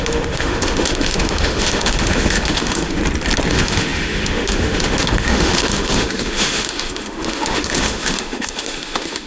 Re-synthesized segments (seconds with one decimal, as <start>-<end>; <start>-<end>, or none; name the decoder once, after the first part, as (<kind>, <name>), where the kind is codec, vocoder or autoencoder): 0.0-3.0 (autoencoder, DAC-VAE); 3.5-9.3